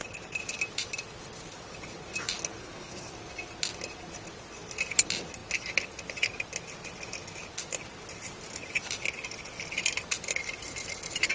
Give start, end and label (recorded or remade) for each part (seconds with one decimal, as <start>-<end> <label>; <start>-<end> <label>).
0.0-2.6 recorded; 2.6-3.1 remade; 3.1-11.3 recorded

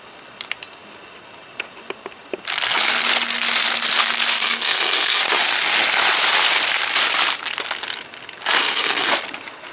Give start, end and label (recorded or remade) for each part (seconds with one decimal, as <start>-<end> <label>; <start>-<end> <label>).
0.0-4.4 recorded; 4.4-5.2 remade; 5.2-8.6 recorded; 8.6-9.1 remade; 9.1-9.7 recorded

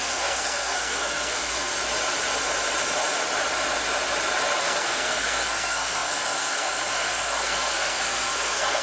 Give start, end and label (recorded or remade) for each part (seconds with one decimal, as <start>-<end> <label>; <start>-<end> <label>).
0.0-1.7 remade; 1.7-4.6 recorded; 4.6-8.8 remade

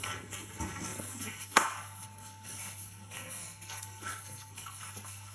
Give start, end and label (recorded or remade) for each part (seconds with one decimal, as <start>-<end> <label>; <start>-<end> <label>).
0.0-5.3 remade

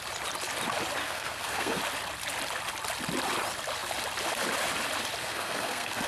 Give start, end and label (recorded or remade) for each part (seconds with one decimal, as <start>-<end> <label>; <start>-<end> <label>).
0.0-1.0 recorded; 1.0-1.8 remade; 1.8-5.2 recorded; 5.2-6.1 remade

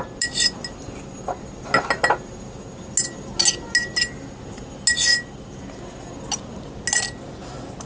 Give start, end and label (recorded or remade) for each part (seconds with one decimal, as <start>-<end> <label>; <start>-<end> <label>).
0.0-7.9 recorded